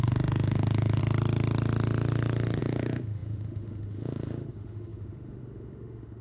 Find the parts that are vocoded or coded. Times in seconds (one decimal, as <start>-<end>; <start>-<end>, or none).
0.0-1.0; 2.6-6.2